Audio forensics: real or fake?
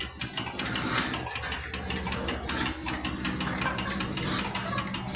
real